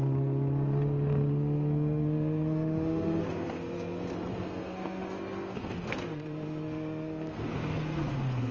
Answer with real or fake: fake